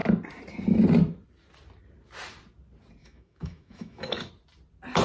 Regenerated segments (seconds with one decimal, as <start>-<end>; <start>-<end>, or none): 3.0-4.3